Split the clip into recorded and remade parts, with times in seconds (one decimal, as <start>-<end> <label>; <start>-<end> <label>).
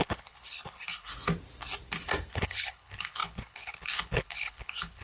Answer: 0.0-1.1 remade; 1.1-2.3 recorded; 2.3-5.0 remade